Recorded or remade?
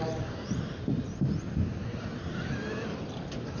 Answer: recorded